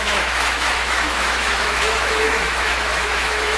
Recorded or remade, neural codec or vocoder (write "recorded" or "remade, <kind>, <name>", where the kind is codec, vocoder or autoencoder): remade, autoencoder, DAC-VAE